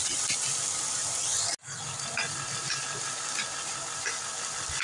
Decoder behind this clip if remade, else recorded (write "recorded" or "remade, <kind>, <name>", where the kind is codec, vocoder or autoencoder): recorded